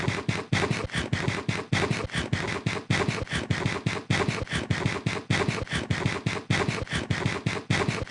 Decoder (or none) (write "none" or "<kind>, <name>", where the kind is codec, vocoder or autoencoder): none